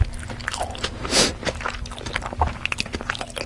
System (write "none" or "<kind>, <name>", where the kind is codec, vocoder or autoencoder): none